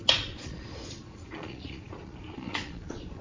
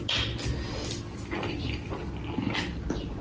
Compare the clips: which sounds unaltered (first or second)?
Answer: second